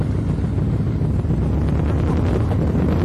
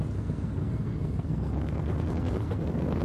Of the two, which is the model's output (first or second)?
second